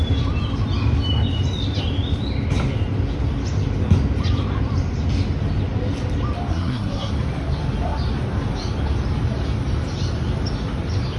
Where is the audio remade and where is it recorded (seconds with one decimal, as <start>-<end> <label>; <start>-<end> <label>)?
0.0-6.5 recorded; 6.5-7.1 remade; 7.1-11.2 recorded